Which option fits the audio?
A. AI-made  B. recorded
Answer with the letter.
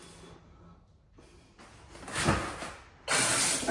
B